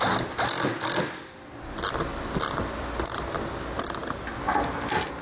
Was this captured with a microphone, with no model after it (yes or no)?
yes